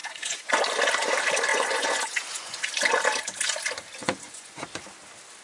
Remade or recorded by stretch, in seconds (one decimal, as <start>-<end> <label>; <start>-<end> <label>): 0.0-0.5 remade; 0.5-1.5 recorded; 1.5-2.7 remade; 2.7-4.0 recorded; 4.0-4.6 remade; 4.6-5.4 recorded